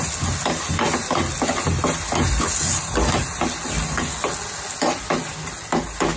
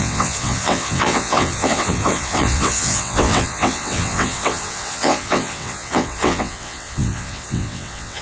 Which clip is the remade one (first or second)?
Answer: second